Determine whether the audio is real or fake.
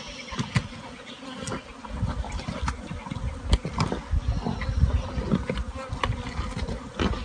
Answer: real